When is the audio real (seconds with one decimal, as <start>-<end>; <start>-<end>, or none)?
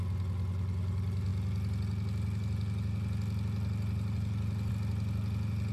0.0-5.7